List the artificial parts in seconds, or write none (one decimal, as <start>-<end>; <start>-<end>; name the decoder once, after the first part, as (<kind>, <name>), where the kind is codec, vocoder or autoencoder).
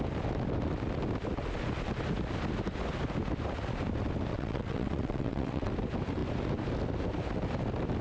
4.3-5.7 (vocoder, WaveNeXt)